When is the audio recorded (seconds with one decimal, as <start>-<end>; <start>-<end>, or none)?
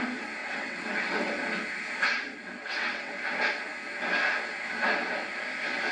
0.0-0.4; 1.3-2.6; 3.1-5.9